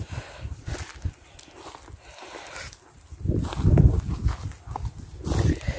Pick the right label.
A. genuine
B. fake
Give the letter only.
A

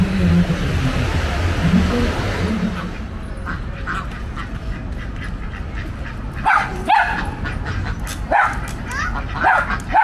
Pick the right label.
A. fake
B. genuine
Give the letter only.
B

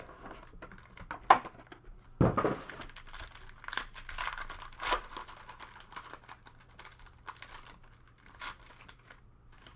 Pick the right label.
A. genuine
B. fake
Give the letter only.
A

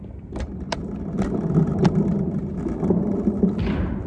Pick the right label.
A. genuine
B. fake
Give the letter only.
A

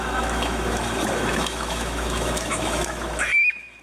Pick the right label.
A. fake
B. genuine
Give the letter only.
A